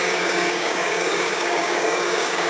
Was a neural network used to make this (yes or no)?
yes